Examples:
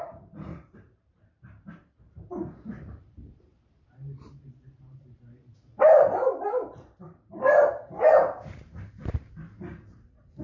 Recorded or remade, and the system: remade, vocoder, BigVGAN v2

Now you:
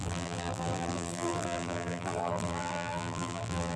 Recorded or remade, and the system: remade, vocoder, BigVGAN v2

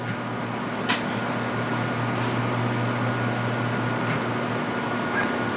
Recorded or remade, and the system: recorded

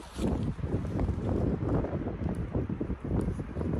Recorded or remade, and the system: recorded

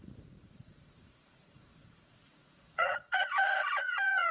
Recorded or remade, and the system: remade, vocoder, Vocos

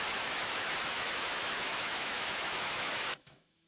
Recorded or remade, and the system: remade, autoencoder, DAC-VAE